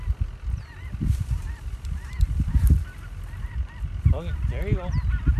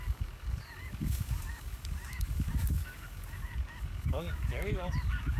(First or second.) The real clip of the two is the first